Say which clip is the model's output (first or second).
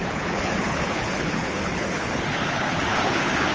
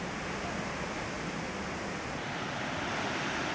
first